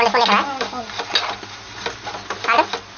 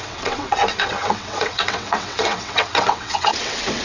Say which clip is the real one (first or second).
first